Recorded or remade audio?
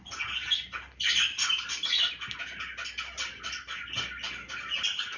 recorded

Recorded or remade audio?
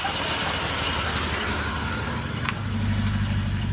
recorded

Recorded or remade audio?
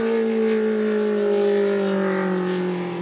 recorded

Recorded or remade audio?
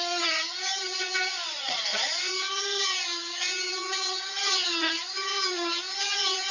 remade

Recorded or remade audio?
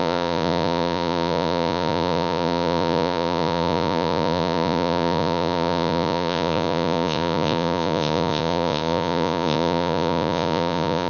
remade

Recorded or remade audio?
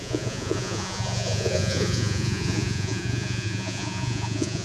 remade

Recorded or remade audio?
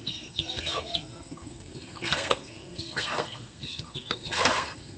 remade